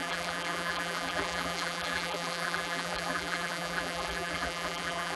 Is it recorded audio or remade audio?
remade